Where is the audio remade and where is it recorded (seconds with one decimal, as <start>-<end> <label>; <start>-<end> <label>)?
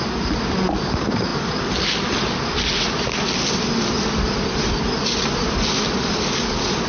0.0-6.9 recorded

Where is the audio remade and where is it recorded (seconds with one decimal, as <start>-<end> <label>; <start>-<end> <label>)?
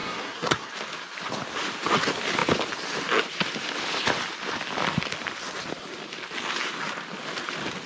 0.0-0.7 remade; 0.7-7.9 recorded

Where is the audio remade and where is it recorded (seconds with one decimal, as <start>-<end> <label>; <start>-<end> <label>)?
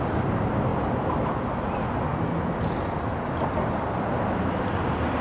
0.0-5.2 recorded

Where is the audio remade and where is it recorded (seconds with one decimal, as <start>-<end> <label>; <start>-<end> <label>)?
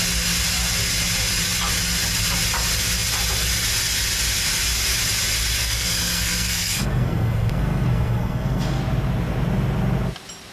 0.0-5.6 recorded; 5.6-8.8 remade; 8.8-10.5 recorded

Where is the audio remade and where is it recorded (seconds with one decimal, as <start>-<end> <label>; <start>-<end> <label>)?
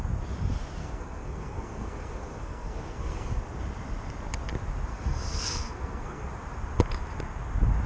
0.0-0.8 recorded; 0.8-3.4 remade; 3.4-4.9 recorded; 4.9-6.3 remade; 6.3-7.9 recorded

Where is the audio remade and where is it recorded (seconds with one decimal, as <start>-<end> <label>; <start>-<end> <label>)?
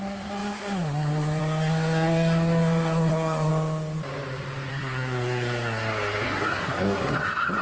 0.0-3.5 remade; 3.5-4.7 recorded; 4.7-7.6 remade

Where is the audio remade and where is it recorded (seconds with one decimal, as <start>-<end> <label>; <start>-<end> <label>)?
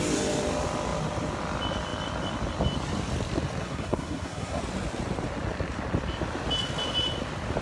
0.0-3.6 recorded; 3.6-4.6 remade; 4.6-7.6 recorded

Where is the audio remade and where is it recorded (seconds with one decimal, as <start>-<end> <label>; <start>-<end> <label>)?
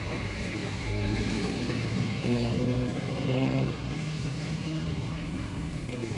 0.0-6.2 remade